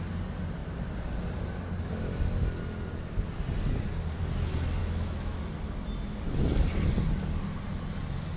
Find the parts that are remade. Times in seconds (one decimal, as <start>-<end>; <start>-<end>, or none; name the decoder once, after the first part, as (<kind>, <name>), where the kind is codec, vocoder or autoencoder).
4.8-5.4 (autoencoder, DAC-VAE)